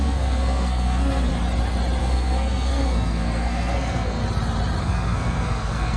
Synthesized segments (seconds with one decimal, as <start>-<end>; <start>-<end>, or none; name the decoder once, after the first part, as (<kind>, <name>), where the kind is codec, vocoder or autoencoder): 0.0-1.3 (codec, SNAC); 2.0-4.2; 4.8-6.0